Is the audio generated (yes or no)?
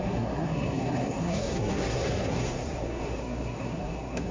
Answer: yes